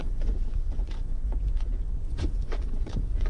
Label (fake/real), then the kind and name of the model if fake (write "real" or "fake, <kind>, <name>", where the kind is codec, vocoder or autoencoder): fake, vocoder, Vocos